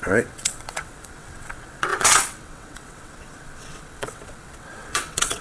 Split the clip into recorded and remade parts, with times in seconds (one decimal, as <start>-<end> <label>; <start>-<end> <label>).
0.0-5.4 remade